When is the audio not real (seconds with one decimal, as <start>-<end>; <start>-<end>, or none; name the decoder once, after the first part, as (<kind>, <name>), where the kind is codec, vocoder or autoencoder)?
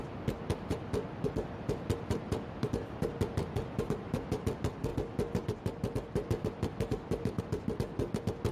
none